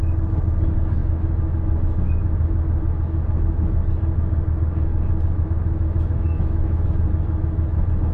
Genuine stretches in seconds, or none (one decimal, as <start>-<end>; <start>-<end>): 4.9-5.4